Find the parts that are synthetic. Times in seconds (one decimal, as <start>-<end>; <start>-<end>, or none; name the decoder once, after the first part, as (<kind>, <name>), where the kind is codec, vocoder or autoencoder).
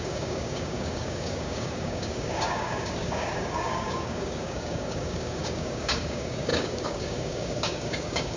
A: 0.0-8.4 (codec, DAC)